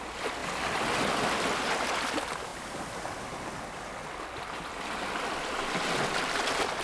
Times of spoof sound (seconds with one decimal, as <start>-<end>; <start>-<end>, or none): none